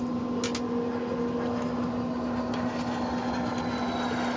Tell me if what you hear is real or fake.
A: real